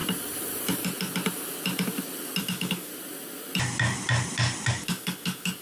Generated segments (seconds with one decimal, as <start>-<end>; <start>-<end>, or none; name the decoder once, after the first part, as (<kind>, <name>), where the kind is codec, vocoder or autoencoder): 2.4-2.9 (codec, DAC); 4.7-5.6